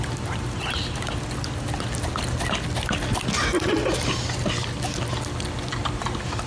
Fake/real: real